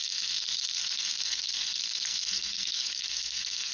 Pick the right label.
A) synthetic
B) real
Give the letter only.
A